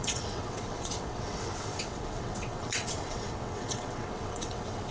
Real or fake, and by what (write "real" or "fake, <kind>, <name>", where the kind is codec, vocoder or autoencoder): fake, vocoder, WaveNeXt